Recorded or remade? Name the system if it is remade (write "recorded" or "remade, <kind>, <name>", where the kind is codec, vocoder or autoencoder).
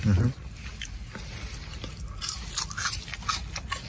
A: recorded